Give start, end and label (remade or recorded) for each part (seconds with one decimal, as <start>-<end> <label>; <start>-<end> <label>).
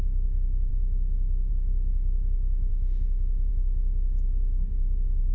0.0-0.7 recorded; 0.7-1.5 remade; 1.5-2.7 recorded; 2.7-3.5 remade; 3.5-5.3 recorded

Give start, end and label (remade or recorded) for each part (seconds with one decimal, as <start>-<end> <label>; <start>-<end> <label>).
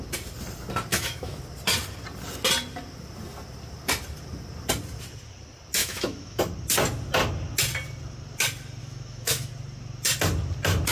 0.0-0.9 recorded; 0.9-1.4 remade; 1.4-5.8 recorded; 5.8-6.4 remade; 6.4-8.8 recorded; 8.8-9.5 remade; 9.5-10.9 recorded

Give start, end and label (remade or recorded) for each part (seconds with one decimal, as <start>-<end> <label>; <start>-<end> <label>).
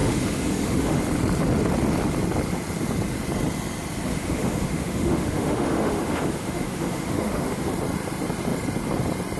0.0-1.0 remade; 1.0-4.1 recorded; 4.1-7.7 remade; 7.7-9.4 recorded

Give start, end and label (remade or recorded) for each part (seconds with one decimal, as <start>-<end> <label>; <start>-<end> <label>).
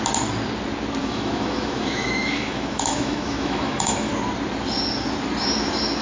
0.0-1.0 recorded; 1.0-4.1 remade; 4.1-6.0 recorded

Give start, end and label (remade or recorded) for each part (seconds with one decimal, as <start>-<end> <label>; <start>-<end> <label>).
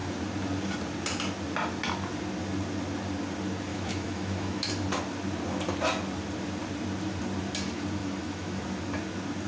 0.0-3.7 recorded; 3.7-4.7 remade; 4.7-8.0 recorded; 8.0-8.6 remade; 8.6-9.5 recorded